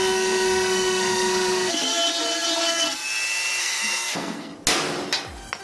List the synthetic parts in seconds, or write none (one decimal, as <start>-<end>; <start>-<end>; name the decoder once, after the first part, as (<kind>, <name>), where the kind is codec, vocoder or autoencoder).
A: 0.0-1.9 (codec, SNAC); 2.6-3.0; 3.6-4.5